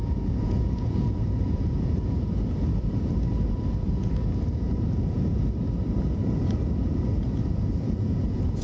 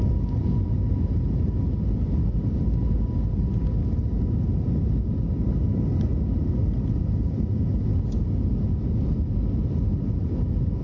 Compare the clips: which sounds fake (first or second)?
first